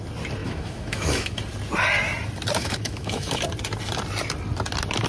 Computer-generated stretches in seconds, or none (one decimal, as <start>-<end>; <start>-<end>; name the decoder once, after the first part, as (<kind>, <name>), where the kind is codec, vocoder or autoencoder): 0.4-1.4 (autoencoder, DAC-VAE); 2.6-3.4